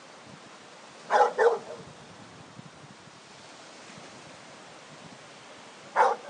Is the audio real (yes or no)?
yes